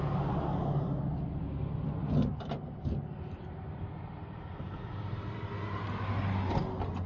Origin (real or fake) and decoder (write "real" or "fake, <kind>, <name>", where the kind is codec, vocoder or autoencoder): real